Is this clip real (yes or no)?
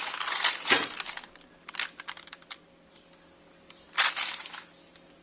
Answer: yes